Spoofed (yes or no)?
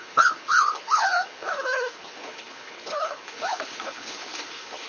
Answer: yes